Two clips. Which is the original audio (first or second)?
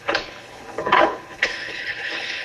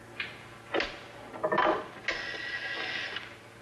second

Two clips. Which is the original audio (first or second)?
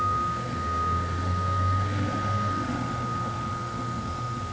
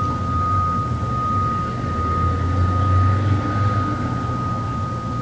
second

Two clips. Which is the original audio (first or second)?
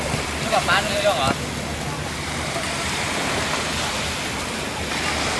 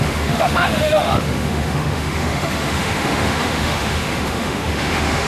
first